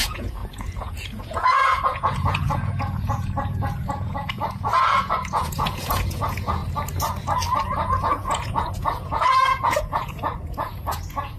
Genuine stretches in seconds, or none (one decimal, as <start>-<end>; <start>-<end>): 6.6-7.6